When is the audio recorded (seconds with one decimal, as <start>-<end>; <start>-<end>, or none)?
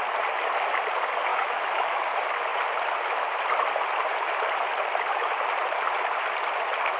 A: 0.0-1.3; 2.0-7.0